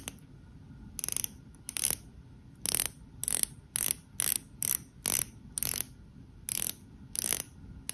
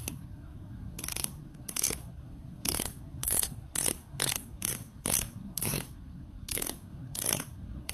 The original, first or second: first